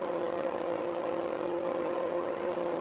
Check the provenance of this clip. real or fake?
fake